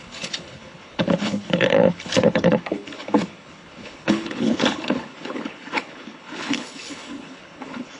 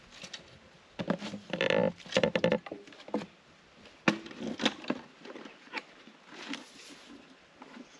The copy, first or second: first